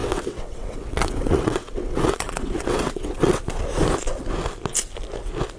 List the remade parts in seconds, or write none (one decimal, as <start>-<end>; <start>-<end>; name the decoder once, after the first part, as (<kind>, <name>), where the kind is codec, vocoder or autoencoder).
0.0-3.4 (vocoder, WaveNeXt)